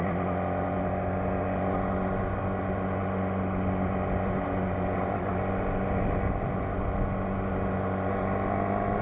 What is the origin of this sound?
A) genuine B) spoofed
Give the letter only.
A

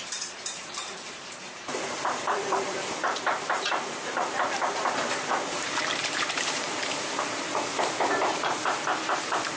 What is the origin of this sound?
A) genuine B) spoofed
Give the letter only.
B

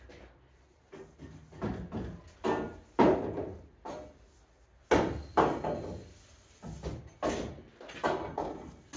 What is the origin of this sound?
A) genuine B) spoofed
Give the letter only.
A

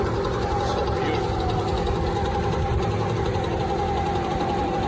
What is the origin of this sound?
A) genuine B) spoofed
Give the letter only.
A